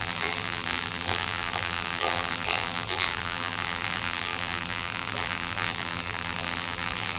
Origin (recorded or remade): remade